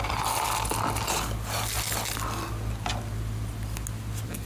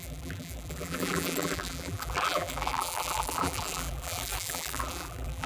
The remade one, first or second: second